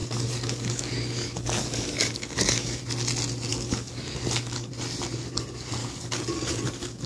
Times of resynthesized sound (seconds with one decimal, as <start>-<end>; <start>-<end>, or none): 0.0-2.8; 3.5-4.7; 5.8-7.1